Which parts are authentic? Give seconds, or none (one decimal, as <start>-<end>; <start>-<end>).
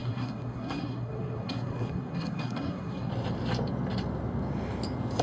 3.1-5.2